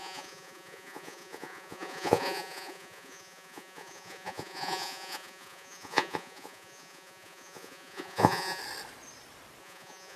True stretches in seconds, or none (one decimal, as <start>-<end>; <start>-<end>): 8.6-9.6